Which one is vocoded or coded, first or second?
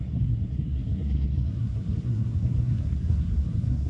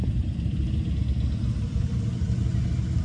first